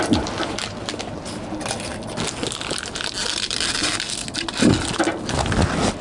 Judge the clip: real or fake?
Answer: real